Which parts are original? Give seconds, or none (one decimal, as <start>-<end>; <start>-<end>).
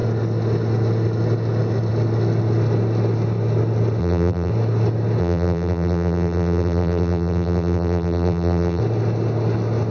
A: 0.0-4.0; 4.5-5.2; 8.8-9.9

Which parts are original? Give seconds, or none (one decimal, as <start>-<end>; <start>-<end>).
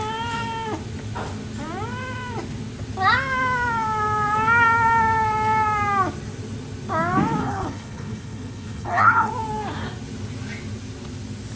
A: 0.0-7.4; 9.3-11.6